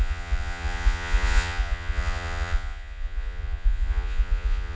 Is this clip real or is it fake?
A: fake